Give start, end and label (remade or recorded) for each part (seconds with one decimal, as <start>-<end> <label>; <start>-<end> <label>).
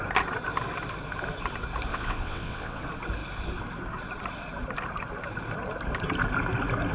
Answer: 0.0-1.9 recorded; 1.9-2.8 remade; 2.8-6.9 recorded